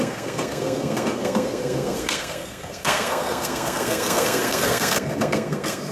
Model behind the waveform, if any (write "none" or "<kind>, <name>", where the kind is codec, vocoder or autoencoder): codec, SNAC